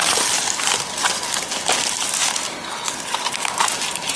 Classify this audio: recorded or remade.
recorded